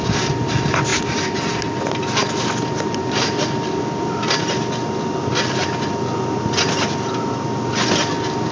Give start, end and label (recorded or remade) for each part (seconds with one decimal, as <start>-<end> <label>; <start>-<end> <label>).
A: 0.0-8.5 recorded